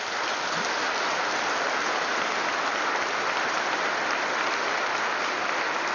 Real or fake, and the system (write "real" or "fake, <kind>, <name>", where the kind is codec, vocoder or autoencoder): real